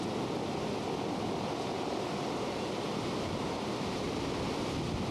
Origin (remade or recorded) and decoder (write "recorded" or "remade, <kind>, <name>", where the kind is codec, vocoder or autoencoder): recorded